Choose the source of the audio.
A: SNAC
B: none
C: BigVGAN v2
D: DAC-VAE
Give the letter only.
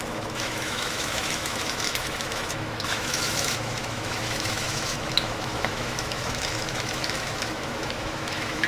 D